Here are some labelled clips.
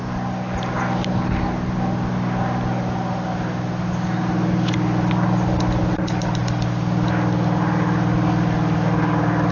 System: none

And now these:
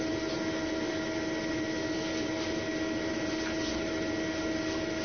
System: none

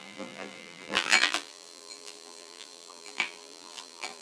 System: vocoder, BigVGAN v2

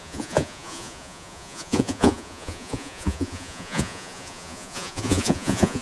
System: vocoder, Vocos